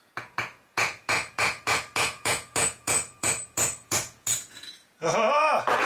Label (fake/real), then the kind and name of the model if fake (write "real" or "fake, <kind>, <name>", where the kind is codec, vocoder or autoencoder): fake, vocoder, Vocos